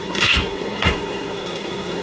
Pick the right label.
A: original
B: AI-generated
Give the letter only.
B